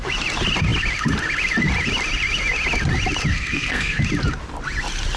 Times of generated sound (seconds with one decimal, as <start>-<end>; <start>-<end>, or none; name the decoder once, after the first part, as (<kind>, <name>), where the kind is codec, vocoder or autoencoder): 3.3-4.0 (codec, SNAC)